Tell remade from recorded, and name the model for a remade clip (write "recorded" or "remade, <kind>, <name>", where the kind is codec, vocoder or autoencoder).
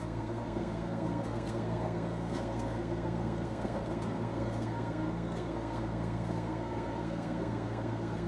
remade, codec, SNAC